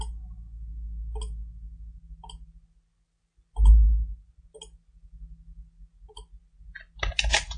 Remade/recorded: recorded